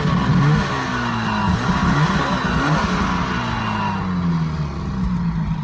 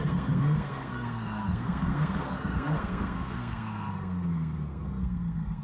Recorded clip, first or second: first